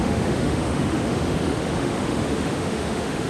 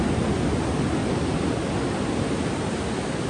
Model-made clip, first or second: first